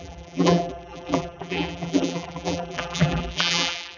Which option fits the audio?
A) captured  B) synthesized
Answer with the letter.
B